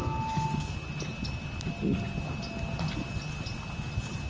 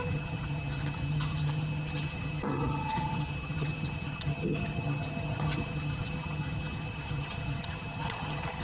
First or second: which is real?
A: first